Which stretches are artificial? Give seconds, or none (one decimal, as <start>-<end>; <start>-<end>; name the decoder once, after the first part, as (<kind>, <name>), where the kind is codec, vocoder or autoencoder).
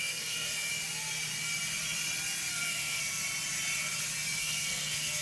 0.0-0.7 (codec, SNAC); 2.5-3.2; 4.4-5.2